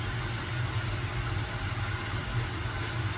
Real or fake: real